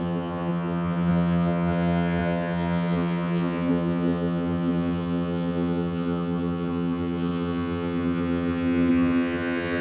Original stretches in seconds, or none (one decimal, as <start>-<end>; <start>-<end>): none

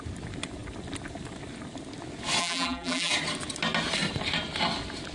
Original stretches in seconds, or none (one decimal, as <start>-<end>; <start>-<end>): 0.0-2.4; 3.1-5.1

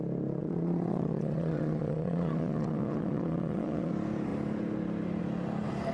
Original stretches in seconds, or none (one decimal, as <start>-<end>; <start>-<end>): 0.0-0.4; 3.9-5.9

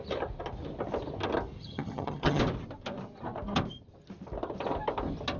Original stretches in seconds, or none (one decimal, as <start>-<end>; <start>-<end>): 0.0-1.6; 2.4-5.4

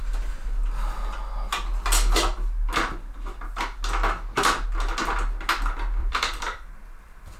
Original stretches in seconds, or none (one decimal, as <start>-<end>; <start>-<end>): 0.0-6.0

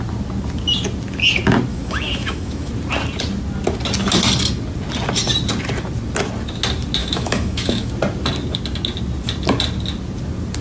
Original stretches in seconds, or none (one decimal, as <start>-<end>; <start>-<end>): 0.0-1.7; 2.7-7.0; 7.9-10.6